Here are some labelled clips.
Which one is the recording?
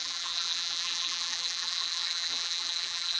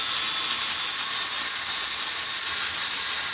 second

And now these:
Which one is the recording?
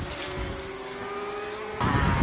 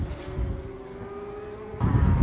first